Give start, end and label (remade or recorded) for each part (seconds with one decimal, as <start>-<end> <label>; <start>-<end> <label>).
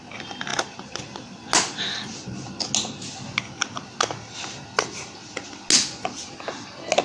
0.0-7.0 recorded